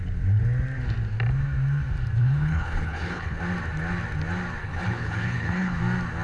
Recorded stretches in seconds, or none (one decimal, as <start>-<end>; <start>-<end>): 0.0-2.2; 3.4-4.6; 5.8-6.2